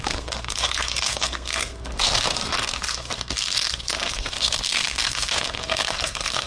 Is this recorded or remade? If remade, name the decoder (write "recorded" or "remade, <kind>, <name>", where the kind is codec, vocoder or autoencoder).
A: remade, codec, SNAC